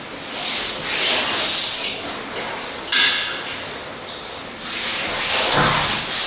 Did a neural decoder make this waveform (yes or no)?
no